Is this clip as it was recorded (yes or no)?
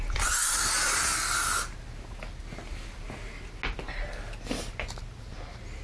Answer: yes